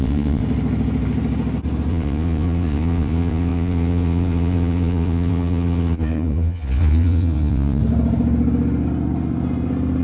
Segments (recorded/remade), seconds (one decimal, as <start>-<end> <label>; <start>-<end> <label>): 0.0-0.4 remade; 0.4-1.9 recorded; 1.9-7.8 remade; 7.8-10.0 recorded